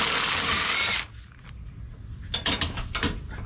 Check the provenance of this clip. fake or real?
real